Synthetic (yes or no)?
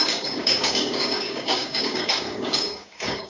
yes